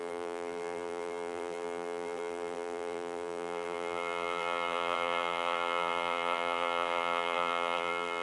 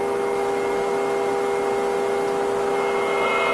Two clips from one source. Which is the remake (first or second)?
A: first